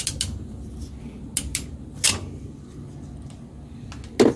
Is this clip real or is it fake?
real